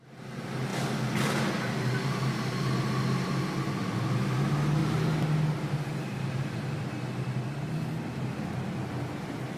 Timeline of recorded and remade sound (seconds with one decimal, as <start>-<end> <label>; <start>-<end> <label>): 0.0-9.6 recorded